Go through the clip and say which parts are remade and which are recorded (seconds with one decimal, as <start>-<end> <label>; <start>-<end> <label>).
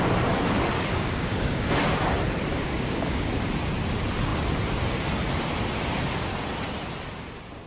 0.0-0.7 recorded; 0.7-1.7 remade; 1.7-2.5 recorded; 2.5-3.3 remade; 3.3-7.7 recorded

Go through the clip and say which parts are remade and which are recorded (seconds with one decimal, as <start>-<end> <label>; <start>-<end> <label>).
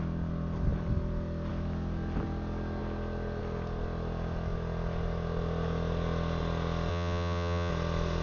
0.0-6.9 recorded; 6.9-7.7 remade; 7.7-8.2 recorded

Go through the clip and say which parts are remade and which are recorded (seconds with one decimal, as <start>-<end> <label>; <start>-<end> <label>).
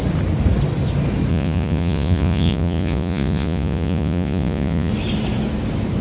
0.0-1.3 recorded; 1.3-4.9 remade; 4.9-6.0 recorded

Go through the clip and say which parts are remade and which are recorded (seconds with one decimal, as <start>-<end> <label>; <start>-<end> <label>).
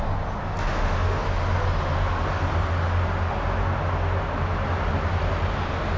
0.0-0.4 recorded; 0.4-1.2 remade; 1.2-6.0 recorded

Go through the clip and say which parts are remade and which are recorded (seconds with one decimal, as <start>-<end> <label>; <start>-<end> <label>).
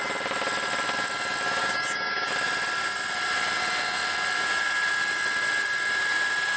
0.0-1.6 recorded; 1.6-2.3 remade; 2.3-6.6 recorded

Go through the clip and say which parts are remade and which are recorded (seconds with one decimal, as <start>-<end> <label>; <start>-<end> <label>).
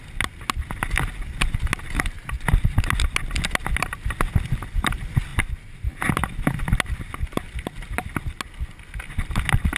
0.0-9.8 recorded